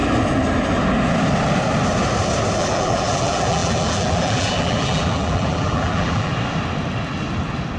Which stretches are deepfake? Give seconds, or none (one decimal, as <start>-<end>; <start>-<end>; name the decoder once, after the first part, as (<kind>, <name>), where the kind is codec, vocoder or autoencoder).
2.6-6.3 (vocoder, BigVGAN v2)